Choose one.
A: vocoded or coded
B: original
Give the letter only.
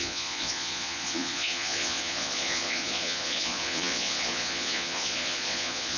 A